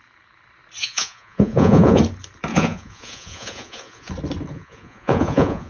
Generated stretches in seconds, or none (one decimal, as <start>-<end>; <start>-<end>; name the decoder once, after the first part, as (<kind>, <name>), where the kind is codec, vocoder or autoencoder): 0.8-2.0 (vocoder, Vocos); 2.5-4.1; 4.5-5.7